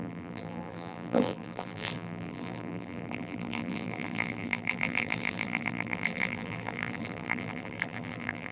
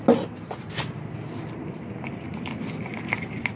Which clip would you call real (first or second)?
second